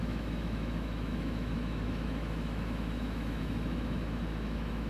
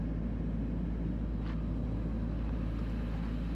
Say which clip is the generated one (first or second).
first